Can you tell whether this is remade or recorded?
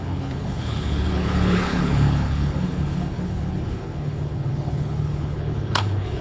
remade